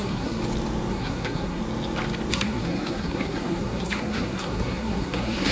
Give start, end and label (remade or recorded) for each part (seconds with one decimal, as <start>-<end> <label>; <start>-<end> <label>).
0.0-0.4 remade; 0.4-0.9 recorded; 0.9-1.6 remade; 1.6-2.3 recorded; 2.3-5.5 remade